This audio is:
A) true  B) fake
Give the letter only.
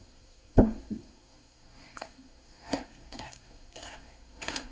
B